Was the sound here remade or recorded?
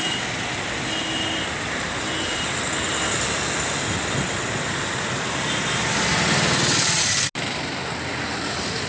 recorded